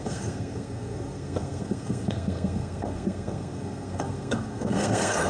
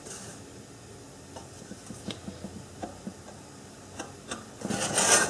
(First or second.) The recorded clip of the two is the second